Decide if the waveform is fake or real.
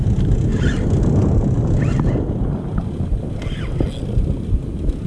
real